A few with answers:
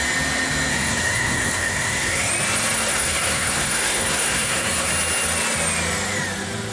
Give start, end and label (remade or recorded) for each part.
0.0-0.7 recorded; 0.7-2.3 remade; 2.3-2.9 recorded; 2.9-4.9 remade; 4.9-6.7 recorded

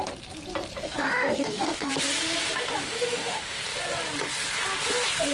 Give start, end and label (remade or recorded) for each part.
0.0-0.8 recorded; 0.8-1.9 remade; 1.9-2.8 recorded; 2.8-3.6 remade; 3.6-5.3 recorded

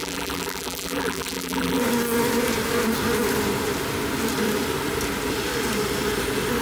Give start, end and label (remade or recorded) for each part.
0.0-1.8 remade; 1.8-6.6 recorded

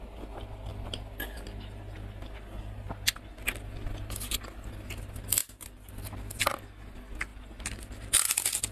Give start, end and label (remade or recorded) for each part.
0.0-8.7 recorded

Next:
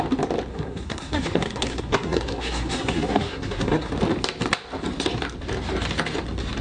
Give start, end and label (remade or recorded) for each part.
0.0-0.5 recorded; 0.5-3.9 remade; 3.9-6.6 recorded

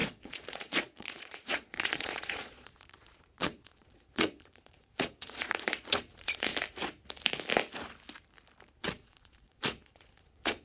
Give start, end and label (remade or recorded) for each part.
0.0-6.5 remade; 6.5-8.8 recorded; 8.8-10.6 remade

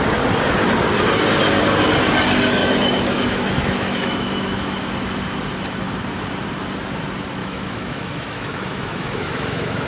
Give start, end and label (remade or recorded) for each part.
0.0-2.6 recorded; 2.6-4.9 remade; 4.9-7.4 recorded; 7.4-9.9 remade